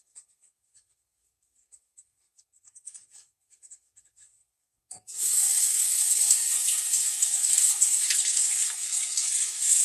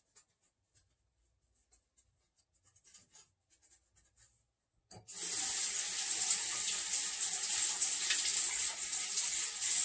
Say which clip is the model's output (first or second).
first